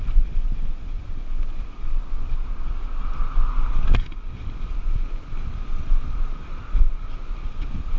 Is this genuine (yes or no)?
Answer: yes